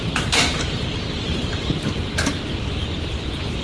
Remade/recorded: remade